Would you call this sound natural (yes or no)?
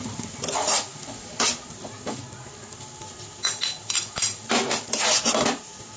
yes